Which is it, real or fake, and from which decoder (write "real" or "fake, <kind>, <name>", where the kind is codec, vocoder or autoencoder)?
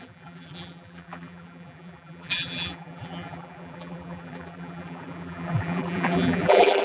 fake, vocoder, BigVGAN v2